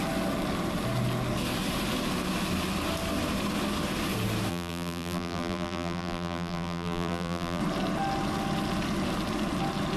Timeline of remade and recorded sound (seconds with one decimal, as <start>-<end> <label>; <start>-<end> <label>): 0.0-4.5 recorded; 4.5-7.6 remade; 7.6-10.0 recorded